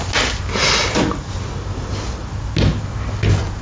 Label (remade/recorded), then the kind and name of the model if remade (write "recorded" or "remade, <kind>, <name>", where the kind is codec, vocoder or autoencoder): recorded